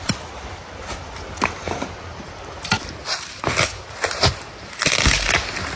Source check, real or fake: real